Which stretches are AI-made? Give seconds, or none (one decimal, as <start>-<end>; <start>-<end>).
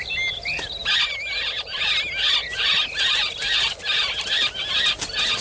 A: none